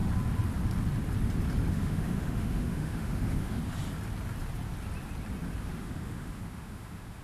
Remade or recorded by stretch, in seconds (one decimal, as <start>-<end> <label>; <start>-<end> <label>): 0.0-1.7 recorded; 1.7-3.6 remade; 3.6-5.6 recorded; 5.6-7.2 remade